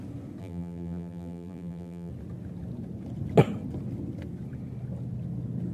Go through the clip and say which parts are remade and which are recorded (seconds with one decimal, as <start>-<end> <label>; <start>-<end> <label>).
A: 0.0-0.4 recorded; 0.4-2.1 remade; 2.1-5.7 recorded